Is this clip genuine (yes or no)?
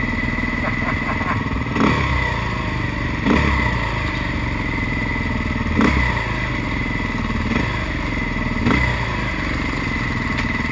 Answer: yes